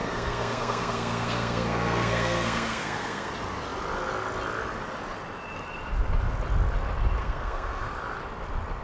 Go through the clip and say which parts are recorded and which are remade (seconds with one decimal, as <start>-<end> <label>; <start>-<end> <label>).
0.0-3.3 remade; 3.3-7.2 recorded; 7.2-8.0 remade; 8.0-8.8 recorded